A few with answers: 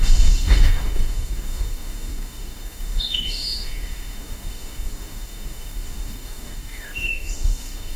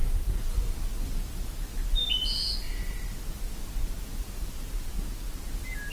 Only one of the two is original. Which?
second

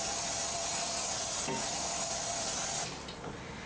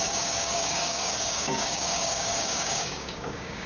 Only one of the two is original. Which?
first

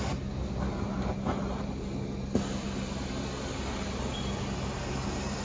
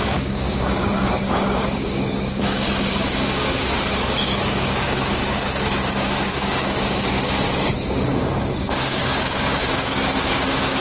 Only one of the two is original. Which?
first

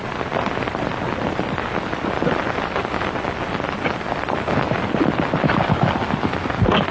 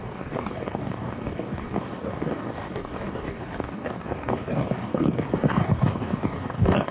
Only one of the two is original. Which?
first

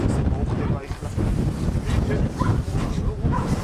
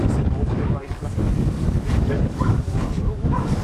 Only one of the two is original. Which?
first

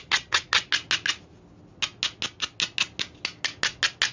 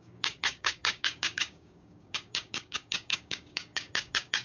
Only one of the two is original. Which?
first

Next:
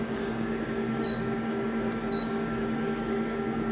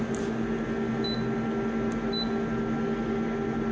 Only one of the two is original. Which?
second